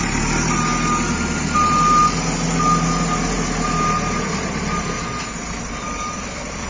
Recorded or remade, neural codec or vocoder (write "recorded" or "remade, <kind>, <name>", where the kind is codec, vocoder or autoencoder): recorded